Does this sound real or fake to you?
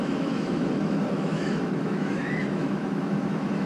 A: fake